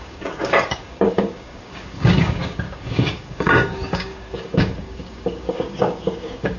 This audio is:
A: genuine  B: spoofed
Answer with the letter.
B